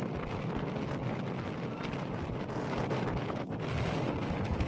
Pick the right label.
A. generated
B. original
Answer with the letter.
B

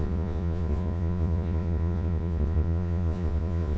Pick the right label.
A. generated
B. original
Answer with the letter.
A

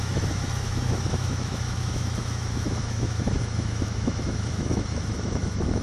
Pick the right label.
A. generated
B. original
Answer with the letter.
A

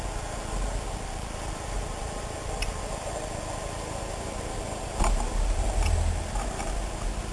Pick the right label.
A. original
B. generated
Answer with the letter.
A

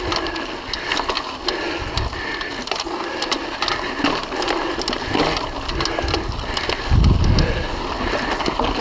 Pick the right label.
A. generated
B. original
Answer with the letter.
B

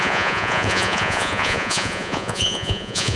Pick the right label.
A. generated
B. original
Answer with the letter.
A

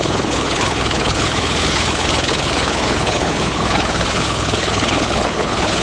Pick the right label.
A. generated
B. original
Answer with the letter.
A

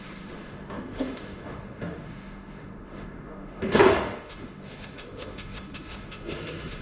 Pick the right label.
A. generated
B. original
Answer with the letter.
A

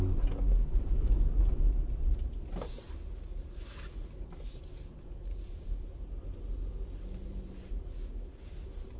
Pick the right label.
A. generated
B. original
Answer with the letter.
B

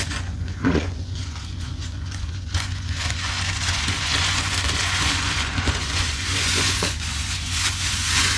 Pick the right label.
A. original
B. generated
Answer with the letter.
B